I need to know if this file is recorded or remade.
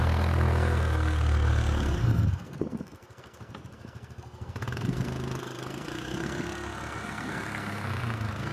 remade